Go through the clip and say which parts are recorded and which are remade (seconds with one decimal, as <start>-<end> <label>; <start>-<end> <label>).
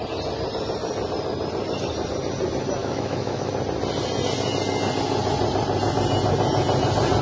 0.0-2.8 recorded; 2.8-3.5 remade; 3.5-7.2 recorded